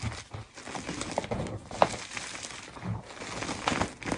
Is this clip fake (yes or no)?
no